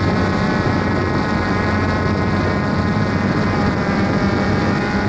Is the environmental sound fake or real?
real